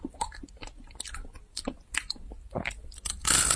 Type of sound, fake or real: real